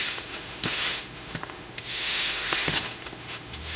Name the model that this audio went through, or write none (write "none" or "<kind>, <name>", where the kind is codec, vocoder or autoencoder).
autoencoder, DAC-VAE